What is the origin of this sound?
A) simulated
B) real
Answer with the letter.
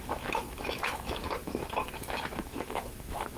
A